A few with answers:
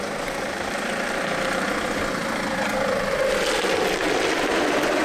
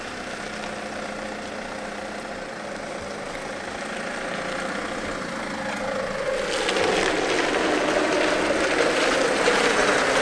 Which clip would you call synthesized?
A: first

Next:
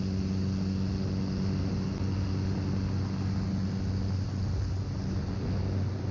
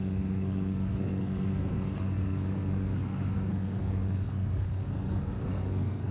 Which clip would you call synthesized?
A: second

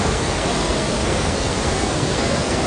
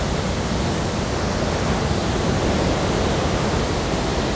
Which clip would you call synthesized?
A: first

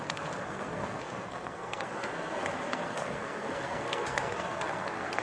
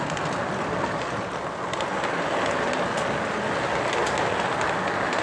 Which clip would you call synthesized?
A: first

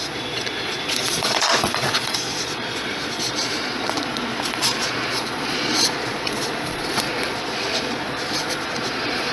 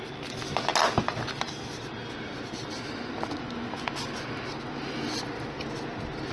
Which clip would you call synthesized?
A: first